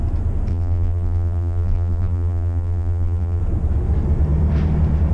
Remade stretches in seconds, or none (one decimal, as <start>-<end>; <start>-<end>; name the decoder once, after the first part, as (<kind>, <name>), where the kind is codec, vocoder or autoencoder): 0.5-3.4 (vocoder, BigVGAN v2)